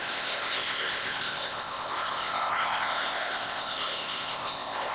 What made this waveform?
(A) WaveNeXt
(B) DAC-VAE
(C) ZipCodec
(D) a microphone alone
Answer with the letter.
C